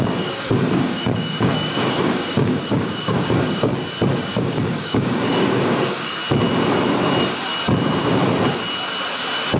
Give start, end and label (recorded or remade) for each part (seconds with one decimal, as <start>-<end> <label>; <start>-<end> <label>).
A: 0.0-3.7 remade; 3.7-4.3 recorded; 4.3-6.2 remade; 6.2-9.6 recorded